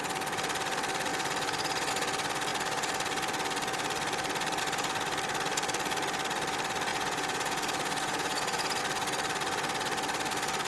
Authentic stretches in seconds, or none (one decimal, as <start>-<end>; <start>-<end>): 0.0-6.9; 8.8-10.7